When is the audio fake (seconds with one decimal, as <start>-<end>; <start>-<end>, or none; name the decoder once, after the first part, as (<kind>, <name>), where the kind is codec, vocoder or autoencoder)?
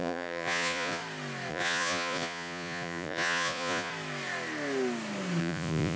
0.0-1.0 (vocoder, Vocos); 1.5-3.9; 5.4-6.0